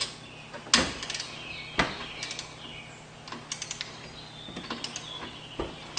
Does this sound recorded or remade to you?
recorded